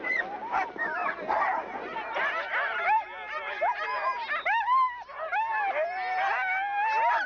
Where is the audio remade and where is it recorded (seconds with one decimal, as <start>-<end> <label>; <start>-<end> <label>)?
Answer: 0.0-1.0 recorded; 1.0-4.3 remade; 4.3-7.3 recorded